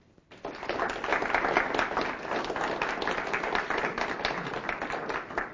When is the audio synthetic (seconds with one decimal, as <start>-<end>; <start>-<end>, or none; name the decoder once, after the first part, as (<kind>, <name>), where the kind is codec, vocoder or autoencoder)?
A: none

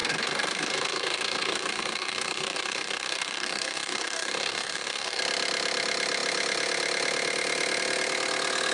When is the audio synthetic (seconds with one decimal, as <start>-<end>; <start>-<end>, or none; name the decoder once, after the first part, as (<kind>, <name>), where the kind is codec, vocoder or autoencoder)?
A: 0.0-5.2 (codec, DAC)